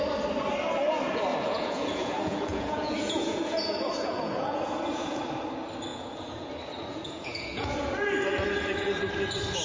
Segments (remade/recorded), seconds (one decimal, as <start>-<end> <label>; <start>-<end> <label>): 0.0-1.3 recorded; 1.3-5.2 remade; 5.2-5.9 recorded; 5.9-6.5 remade; 6.5-6.9 recorded; 6.9-7.7 remade; 7.7-9.6 recorded